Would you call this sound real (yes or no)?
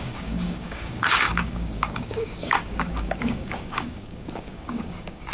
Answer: no